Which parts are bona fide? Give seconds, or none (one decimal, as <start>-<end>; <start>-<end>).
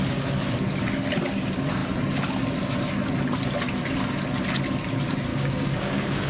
0.0-5.3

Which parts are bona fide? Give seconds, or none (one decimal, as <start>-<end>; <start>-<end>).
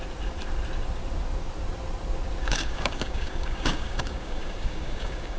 0.0-2.4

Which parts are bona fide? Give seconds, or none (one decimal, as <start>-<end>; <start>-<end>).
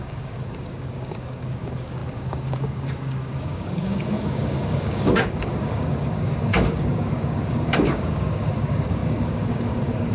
none